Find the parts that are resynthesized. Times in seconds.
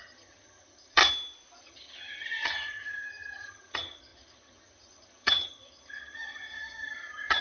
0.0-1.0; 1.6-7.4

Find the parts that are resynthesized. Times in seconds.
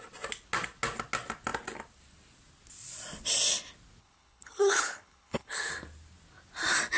4.0-5.7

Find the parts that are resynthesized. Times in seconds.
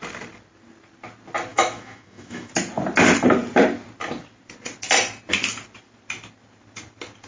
1.5-2.5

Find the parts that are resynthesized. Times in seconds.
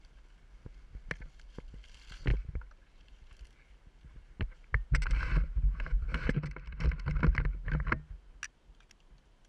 2.3-2.9; 4.1-4.6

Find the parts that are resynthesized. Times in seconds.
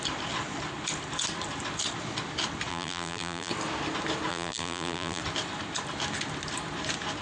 2.7-3.5; 4.3-5.2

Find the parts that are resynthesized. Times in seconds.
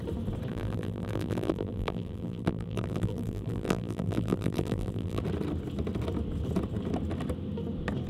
0.5-5.2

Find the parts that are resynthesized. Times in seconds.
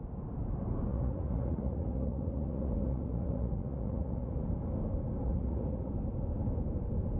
0.9-4.4; 5.2-5.9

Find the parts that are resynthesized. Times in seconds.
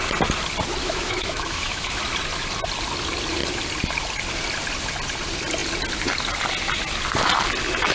0.8-2.0